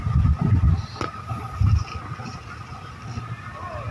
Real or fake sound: real